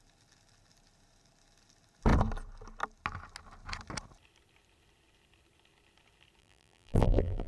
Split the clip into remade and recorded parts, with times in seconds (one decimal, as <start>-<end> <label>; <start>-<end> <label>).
0.0-6.4 recorded; 6.4-7.5 remade